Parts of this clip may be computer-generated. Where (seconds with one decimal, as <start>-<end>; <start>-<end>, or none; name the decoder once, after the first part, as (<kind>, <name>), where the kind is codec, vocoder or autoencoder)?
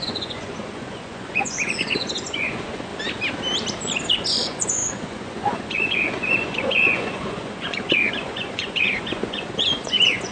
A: 0.0-2.9 (vocoder, Vocos); 4.1-10.3